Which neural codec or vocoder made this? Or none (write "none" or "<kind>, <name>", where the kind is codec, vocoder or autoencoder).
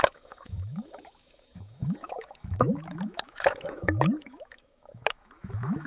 autoencoder, DAC-VAE